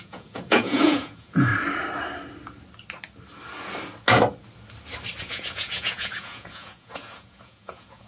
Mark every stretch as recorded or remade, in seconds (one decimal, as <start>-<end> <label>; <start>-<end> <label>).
0.0-1.5 remade; 1.5-5.2 recorded; 5.2-8.1 remade